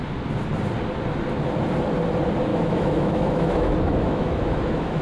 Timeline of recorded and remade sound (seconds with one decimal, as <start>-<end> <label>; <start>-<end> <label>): 0.0-2.5 recorded; 2.5-5.0 remade